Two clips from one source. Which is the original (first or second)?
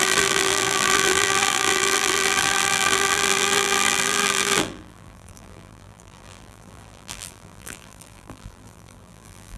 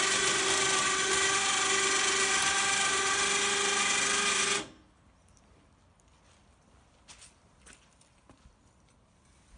second